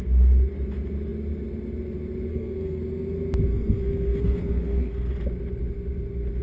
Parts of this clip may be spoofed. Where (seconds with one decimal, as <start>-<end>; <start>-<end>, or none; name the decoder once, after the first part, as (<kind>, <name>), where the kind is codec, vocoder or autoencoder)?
2.3-2.8 (codec, SNAC); 3.5-5.1

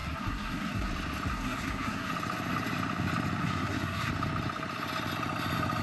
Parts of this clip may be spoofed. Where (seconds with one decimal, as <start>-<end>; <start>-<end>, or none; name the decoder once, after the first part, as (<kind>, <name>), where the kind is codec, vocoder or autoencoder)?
0.0-0.9 (codec, SNAC); 1.3-2.1; 3.4-4.1

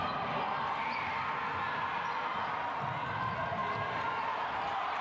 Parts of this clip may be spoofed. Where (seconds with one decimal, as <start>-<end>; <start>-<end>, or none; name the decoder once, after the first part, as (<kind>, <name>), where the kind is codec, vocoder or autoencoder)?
none

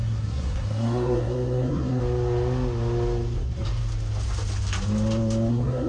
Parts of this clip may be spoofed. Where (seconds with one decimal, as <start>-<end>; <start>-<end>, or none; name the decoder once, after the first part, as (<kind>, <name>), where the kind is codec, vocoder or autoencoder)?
0.0-2.0 (codec, SNAC); 5.5-5.9

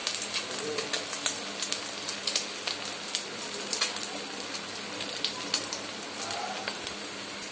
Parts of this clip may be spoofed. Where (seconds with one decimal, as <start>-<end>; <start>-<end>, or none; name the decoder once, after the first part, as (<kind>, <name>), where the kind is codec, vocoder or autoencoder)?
none

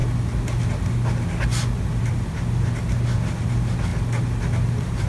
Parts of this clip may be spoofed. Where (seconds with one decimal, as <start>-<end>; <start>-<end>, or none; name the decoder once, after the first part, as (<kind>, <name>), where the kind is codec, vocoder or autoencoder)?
none

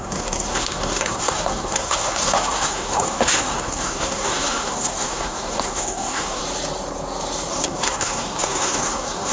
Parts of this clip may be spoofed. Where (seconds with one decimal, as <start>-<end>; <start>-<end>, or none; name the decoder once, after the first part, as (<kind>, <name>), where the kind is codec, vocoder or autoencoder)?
0.0-6.4 (codec, SNAC); 7.5-9.3

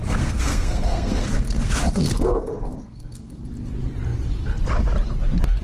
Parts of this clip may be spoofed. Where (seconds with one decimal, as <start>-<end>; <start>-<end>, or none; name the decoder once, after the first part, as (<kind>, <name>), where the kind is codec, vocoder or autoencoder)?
0.0-3.4 (codec, SNAC)